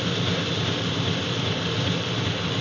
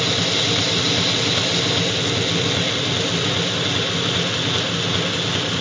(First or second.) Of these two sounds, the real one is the second